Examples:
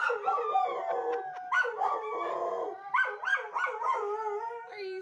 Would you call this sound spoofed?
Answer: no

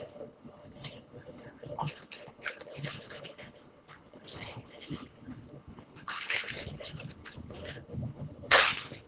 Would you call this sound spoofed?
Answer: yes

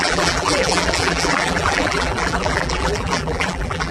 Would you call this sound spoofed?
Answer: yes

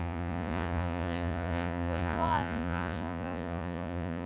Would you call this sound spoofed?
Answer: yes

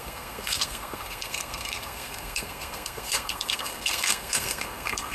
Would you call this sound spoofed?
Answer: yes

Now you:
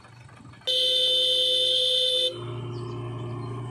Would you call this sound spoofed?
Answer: no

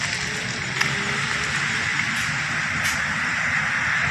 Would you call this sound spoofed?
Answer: no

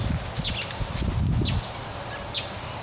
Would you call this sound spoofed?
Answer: no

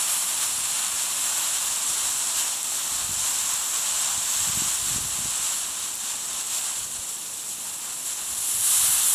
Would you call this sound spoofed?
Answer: yes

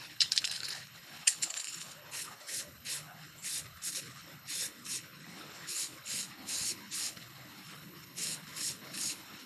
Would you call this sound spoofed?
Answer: yes